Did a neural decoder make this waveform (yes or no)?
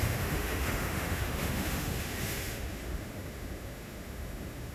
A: yes